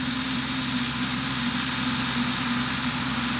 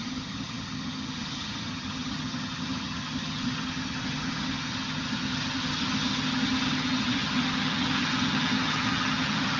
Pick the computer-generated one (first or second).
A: second